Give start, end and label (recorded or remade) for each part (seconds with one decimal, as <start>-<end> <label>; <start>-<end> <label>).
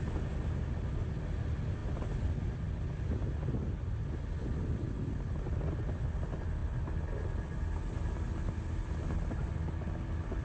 0.0-10.4 recorded